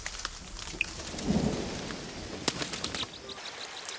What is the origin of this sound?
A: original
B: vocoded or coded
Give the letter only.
A